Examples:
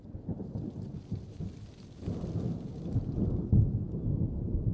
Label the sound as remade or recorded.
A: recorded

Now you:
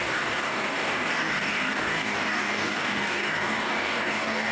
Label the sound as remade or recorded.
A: remade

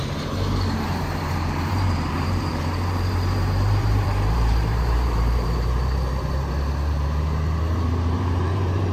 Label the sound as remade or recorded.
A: remade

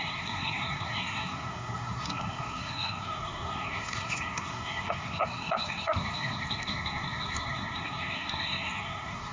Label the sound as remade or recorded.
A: remade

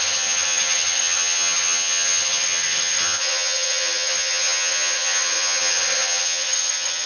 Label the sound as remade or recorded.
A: remade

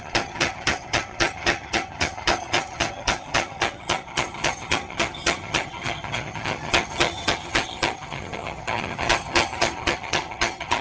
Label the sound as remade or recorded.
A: remade